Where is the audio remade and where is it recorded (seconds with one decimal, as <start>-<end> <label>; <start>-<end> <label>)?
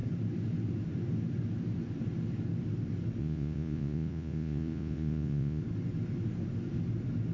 0.0-3.2 recorded; 3.2-5.6 remade; 5.6-7.3 recorded